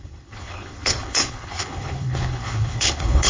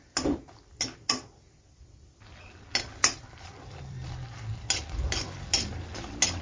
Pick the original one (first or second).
second